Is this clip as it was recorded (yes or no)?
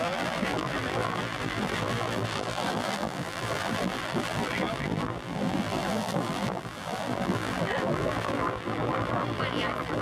no